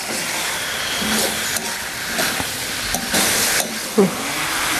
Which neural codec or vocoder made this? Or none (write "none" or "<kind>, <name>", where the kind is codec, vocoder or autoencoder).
none